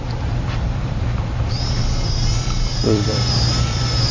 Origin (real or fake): fake